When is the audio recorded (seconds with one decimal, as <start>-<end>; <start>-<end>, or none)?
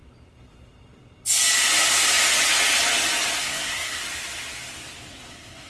0.0-3.4; 4.0-5.3